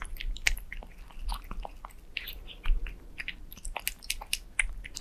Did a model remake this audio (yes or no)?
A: no